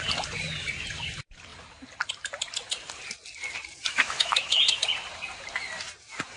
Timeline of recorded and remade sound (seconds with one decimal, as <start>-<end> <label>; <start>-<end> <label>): 0.0-3.9 recorded; 3.9-4.8 remade; 4.8-6.4 recorded

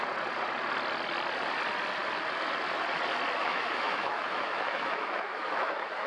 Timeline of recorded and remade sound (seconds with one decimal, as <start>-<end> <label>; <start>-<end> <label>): 0.0-3.4 recorded; 3.4-6.1 remade

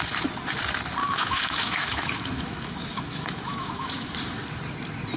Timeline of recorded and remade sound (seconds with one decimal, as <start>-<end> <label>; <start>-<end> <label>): 0.0-1.0 recorded; 1.0-4.1 remade; 4.1-5.2 recorded

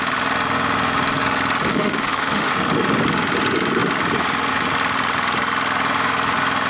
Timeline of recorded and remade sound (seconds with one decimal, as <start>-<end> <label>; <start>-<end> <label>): 0.0-1.7 recorded; 1.7-2.5 remade; 2.5-6.7 recorded

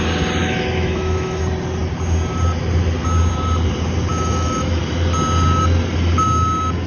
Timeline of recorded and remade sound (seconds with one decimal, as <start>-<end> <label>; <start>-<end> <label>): 0.0-0.4 recorded; 0.4-1.4 remade; 1.4-4.1 recorded; 4.1-4.8 remade; 4.8-6.9 recorded

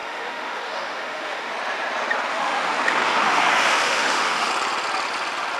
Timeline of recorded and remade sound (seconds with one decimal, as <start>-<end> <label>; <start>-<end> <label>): 0.0-1.5 remade; 1.5-2.3 recorded; 2.3-4.5 remade; 4.5-5.6 recorded

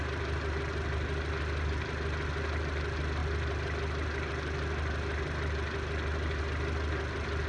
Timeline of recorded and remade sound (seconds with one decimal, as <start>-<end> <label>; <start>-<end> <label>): 0.0-7.5 recorded

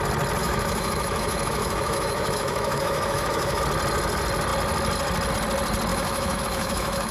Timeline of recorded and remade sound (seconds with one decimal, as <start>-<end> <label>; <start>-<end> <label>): 0.0-0.4 recorded; 0.4-3.6 remade; 3.6-5.9 recorded; 5.9-7.1 remade